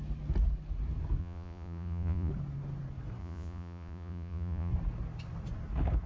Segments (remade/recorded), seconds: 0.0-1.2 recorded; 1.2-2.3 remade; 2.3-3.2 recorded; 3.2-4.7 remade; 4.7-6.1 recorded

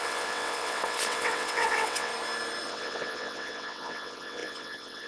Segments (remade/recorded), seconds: 0.0-2.1 remade; 2.1-2.7 recorded; 2.7-5.1 remade